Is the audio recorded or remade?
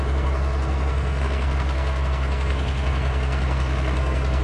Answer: remade